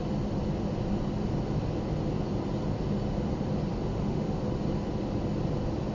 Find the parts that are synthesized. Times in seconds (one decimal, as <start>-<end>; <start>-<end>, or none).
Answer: 3.9-4.4